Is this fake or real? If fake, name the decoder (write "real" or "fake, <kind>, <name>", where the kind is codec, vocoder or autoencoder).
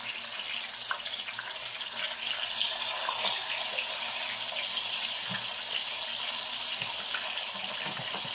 real